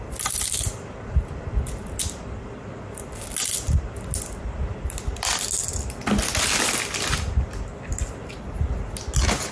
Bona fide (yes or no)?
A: yes